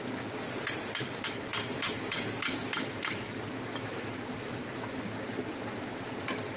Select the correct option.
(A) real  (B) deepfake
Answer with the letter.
A